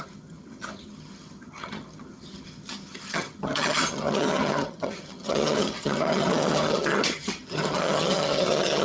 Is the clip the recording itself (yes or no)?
no